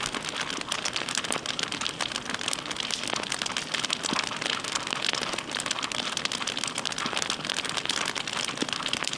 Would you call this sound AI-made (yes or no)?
no